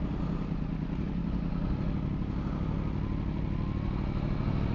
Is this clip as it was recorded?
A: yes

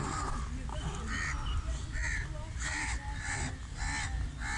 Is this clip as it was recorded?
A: yes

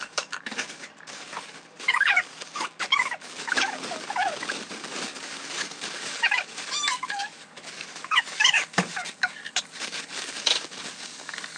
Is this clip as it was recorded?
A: no